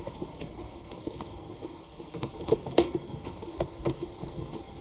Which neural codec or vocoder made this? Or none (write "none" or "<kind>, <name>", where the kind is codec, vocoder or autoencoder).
codec, SNAC